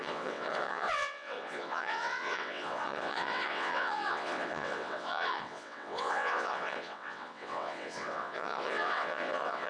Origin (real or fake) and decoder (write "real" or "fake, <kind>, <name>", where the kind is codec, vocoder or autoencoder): fake, vocoder, WaveNeXt